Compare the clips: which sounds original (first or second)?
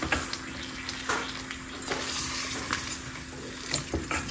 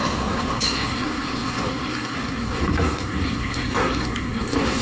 first